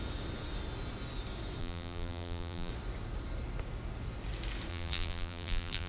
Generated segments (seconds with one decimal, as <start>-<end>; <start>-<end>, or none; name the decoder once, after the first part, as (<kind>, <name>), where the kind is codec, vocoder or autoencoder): 1.6-2.7 (vocoder, BigVGAN v2); 4.7-5.9